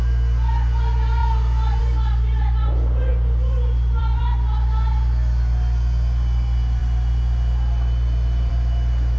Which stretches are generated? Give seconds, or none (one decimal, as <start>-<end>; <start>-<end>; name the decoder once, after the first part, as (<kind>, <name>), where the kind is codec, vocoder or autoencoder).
3.1-4.2 (vocoder, BigVGAN v2); 6.8-8.5